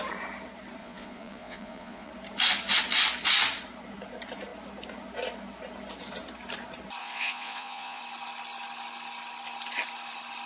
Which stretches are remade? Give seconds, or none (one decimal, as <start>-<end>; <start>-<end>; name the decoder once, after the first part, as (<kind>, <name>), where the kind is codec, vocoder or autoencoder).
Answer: 0.8-2.1 (vocoder, Vocos); 7.0-8.0